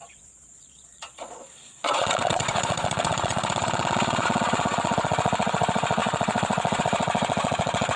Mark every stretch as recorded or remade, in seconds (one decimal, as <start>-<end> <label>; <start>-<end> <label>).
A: 0.0-8.0 remade

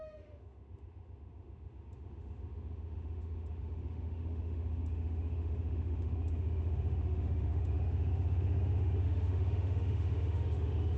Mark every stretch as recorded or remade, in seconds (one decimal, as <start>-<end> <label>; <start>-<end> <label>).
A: 0.0-11.0 remade

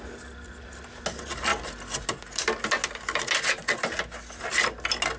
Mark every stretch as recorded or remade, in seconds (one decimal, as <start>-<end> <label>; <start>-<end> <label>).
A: 0.0-5.2 recorded